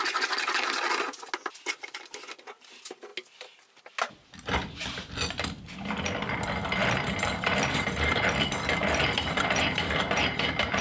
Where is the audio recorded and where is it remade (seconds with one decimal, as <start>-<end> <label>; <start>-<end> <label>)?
0.0-6.8 recorded; 6.8-10.8 remade